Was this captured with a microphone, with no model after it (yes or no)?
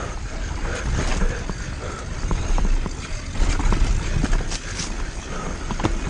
yes